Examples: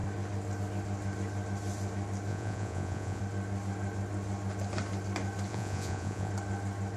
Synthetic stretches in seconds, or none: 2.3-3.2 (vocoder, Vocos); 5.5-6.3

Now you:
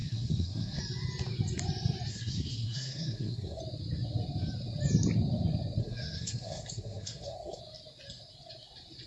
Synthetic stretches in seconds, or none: 0.0-0.8 (codec, SNAC); 2.1-3.6; 5.8-7.6

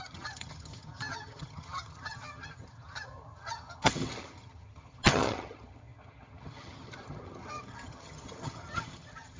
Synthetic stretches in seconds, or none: 0.0-9.4 (vocoder, HiFi-GAN)

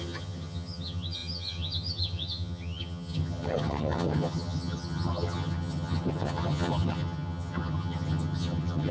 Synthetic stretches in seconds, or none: 0.0-8.9 (vocoder, HiFi-GAN)